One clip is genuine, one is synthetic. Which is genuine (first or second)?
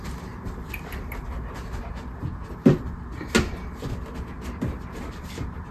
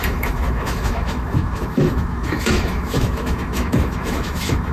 first